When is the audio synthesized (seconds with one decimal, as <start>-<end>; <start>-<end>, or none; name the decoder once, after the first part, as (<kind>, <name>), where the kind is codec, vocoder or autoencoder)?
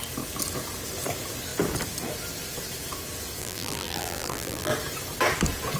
3.4-4.7 (vocoder, BigVGAN v2)